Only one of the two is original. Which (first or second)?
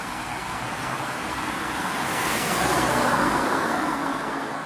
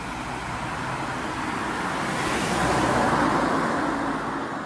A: second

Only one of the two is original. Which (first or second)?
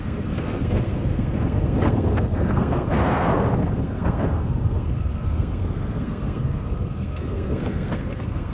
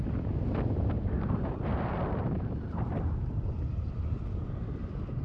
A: second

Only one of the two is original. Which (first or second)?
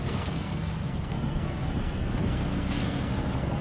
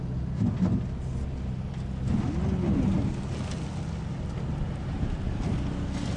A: second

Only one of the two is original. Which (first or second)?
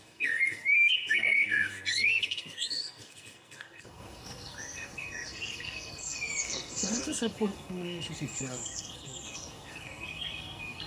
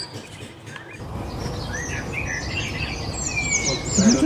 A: second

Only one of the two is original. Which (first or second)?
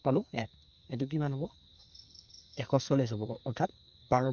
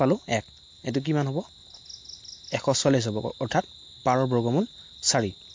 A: second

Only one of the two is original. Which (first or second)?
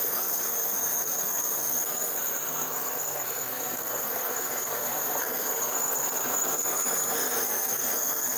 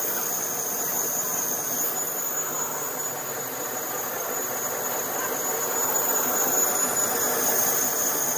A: second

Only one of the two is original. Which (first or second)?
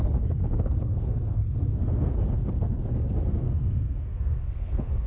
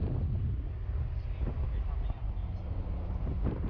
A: second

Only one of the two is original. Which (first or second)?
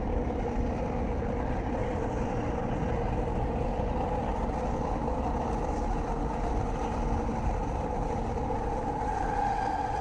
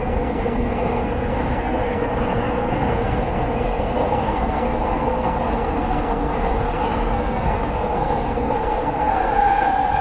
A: first